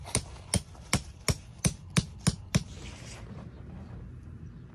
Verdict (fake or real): real